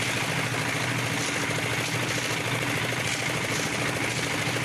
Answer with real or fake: real